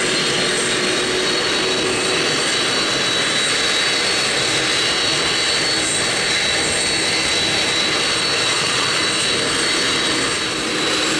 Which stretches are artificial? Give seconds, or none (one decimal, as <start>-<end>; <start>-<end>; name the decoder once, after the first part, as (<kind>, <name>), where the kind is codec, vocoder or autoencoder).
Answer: 8.5-9.0 (vocoder, Vocos)